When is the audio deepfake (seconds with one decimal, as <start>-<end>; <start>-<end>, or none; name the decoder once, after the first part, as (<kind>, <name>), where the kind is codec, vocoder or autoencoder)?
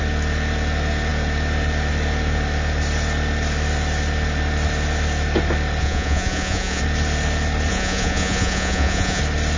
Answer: 5.8-6.8 (vocoder, Vocos); 7.7-9.2